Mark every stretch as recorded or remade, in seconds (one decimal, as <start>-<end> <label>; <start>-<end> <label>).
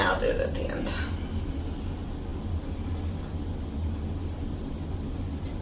0.0-5.6 recorded